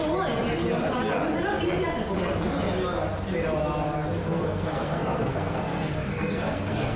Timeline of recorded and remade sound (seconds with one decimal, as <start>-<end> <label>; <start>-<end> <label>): 0.0-4.2 recorded; 4.2-7.0 remade